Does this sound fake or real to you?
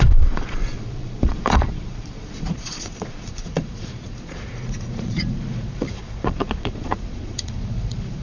fake